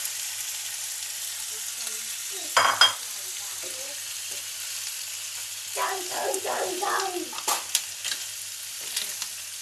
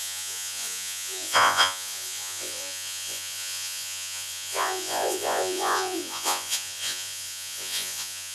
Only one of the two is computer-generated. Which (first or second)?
second